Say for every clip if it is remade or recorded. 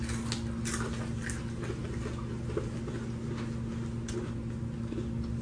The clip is recorded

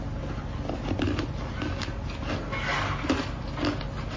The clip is recorded